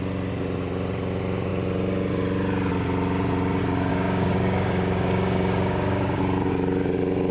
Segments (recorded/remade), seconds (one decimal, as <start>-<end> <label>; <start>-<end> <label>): 0.0-3.9 recorded; 3.9-6.2 remade; 6.2-7.3 recorded

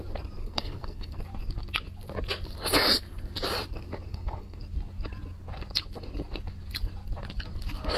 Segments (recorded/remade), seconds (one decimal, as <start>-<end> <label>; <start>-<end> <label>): 0.0-0.4 recorded; 0.4-1.2 remade; 1.2-4.1 recorded; 4.1-4.6 remade; 4.6-8.0 recorded

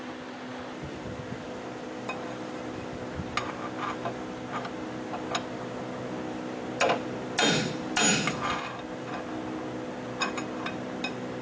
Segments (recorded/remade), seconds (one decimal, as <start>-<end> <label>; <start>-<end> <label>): 0.0-11.4 recorded